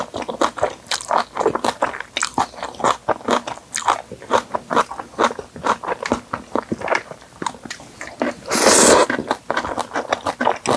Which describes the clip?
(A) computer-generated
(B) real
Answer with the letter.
B